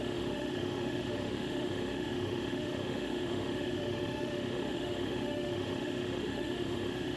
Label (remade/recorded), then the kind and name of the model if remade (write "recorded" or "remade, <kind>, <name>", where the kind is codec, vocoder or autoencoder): remade, autoencoder, DAC-VAE